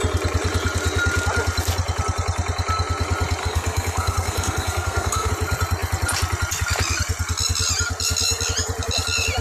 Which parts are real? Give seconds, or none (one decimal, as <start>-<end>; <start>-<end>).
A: 0.0-3.4; 5.3-9.4